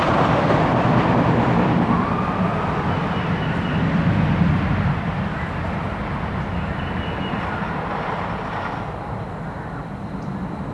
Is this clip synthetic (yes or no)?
no